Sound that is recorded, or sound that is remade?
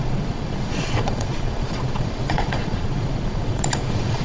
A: remade